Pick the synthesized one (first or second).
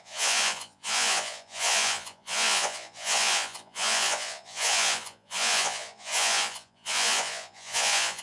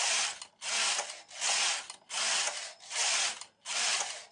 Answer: first